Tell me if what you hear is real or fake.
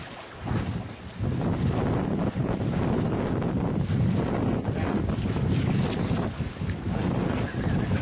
real